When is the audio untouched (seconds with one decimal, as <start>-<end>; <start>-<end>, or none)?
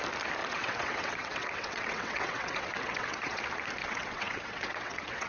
0.0-0.4; 3.4-3.8